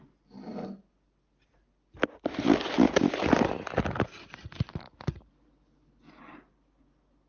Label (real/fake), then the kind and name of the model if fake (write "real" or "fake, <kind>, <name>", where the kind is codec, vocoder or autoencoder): real